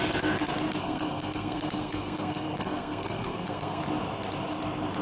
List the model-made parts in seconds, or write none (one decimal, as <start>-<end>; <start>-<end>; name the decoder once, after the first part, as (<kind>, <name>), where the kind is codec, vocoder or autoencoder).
0.8-3.8 (codec, SNAC)